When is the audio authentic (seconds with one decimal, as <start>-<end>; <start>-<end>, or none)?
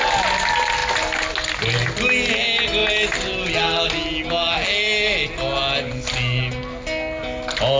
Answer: 0.0-7.8